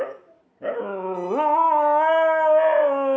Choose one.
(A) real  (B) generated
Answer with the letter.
A